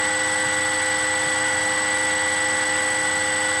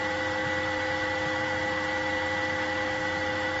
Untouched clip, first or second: first